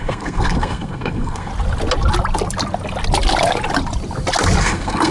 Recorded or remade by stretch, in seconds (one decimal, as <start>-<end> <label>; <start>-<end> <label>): 0.0-1.5 remade; 1.5-4.6 recorded; 4.6-5.1 remade